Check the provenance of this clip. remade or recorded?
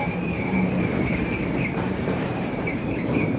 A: remade